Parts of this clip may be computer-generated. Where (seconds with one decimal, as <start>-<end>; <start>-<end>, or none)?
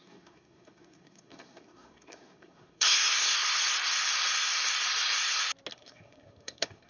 0.0-3.6; 5.7-6.9